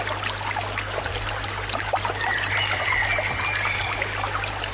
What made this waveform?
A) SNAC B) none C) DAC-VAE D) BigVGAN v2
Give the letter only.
B